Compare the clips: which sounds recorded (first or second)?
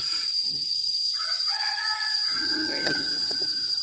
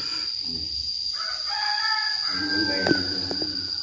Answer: second